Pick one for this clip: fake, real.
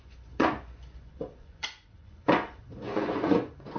fake